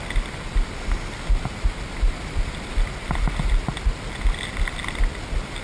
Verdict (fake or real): real